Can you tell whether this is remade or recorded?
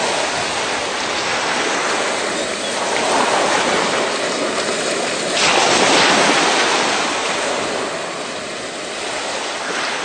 recorded